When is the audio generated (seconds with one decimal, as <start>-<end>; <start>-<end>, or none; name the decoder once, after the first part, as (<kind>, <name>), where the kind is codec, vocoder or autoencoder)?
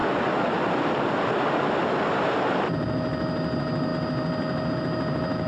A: none